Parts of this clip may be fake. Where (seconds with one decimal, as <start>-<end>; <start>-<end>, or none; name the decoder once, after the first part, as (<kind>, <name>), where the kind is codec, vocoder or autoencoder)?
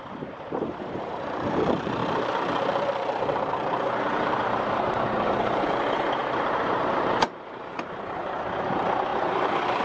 0.0-9.8 (vocoder, BigVGAN v2)